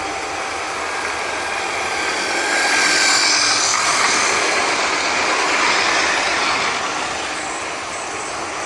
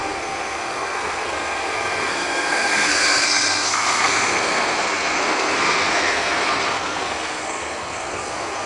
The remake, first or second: second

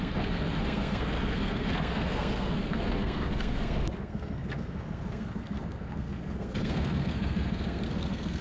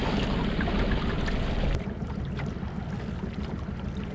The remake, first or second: first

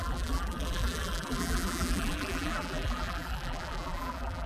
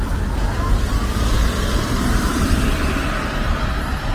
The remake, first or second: first